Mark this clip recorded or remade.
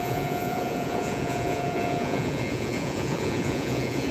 remade